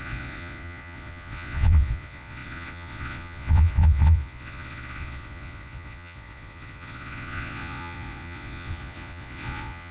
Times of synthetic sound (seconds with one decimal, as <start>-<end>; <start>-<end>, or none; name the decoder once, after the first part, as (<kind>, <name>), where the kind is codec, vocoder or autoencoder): 0.0-9.9 (vocoder, Vocos)